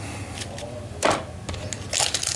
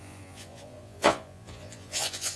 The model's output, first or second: second